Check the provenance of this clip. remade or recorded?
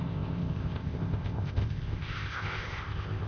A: remade